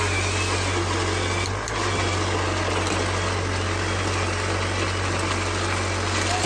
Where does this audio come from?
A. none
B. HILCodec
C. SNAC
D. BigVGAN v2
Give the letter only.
A